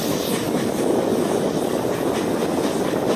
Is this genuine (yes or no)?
yes